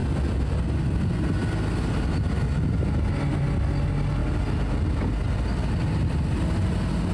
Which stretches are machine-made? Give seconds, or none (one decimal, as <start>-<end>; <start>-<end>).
none

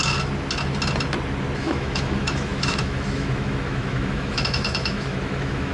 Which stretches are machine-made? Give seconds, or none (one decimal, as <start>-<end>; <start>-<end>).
1.6-5.7

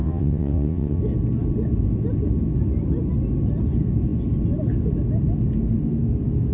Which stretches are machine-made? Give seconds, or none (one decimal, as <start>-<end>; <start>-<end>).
0.0-1.0

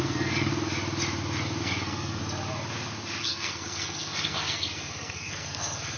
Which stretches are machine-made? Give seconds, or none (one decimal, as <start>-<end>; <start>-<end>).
0.0-0.5; 1.6-2.2; 3.2-6.0

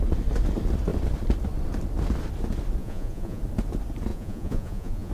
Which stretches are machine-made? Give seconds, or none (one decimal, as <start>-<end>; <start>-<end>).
2.8-3.4; 4.1-5.1

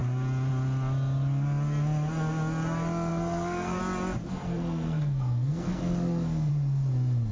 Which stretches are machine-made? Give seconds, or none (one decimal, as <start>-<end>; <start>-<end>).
3.1-3.8; 4.2-6.5

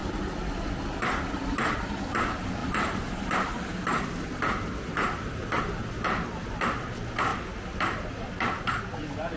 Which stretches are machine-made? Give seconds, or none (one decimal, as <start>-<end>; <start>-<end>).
none